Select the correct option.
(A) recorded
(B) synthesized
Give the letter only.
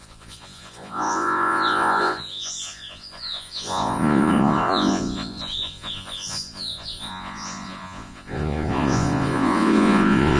B